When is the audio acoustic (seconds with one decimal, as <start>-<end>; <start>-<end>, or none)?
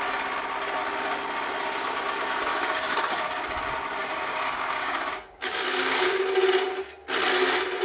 0.0-2.5; 3.6-4.0; 6.2-7.8